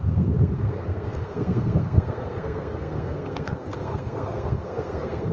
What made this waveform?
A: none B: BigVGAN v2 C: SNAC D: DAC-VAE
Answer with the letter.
C